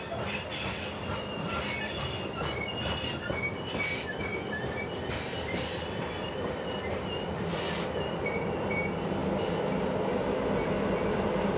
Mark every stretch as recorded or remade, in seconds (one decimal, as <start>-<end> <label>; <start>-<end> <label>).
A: 0.0-11.6 recorded